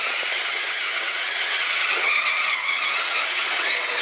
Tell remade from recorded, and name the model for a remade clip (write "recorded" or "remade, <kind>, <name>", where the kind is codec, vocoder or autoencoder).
remade, vocoder, WaveNeXt